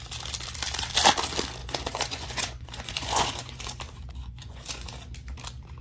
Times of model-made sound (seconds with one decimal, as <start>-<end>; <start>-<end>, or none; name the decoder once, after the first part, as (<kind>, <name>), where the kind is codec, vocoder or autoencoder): 1.6-3.8 (vocoder, Vocos); 4.2-4.9